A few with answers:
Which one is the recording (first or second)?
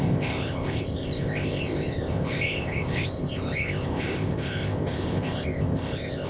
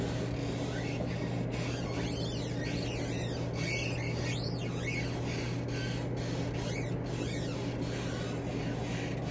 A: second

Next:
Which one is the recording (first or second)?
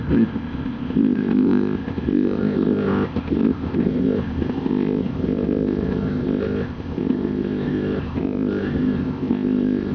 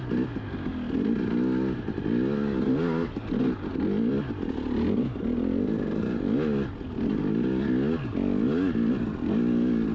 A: second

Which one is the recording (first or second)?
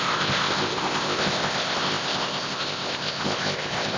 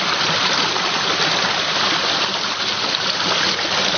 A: second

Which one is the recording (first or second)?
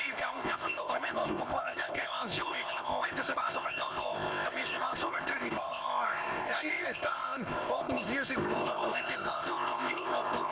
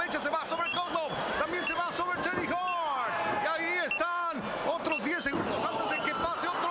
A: second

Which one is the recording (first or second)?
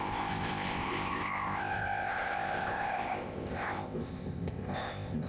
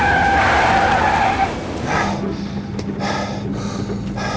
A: second